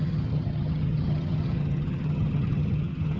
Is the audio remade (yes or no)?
yes